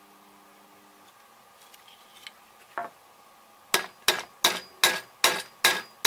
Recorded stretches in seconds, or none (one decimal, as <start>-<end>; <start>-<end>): 0.0-6.1